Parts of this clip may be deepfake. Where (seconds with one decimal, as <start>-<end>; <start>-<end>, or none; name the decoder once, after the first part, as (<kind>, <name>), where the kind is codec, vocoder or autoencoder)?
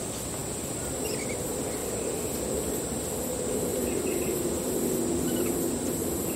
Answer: 3.7-5.8 (vocoder, BigVGAN v2)